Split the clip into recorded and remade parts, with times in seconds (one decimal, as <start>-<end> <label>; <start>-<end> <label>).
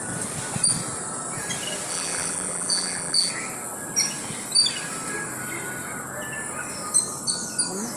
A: 0.0-1.9 recorded; 1.9-3.3 remade; 3.3-8.0 recorded